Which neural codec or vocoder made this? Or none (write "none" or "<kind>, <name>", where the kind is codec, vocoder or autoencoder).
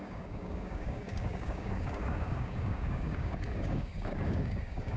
codec, DAC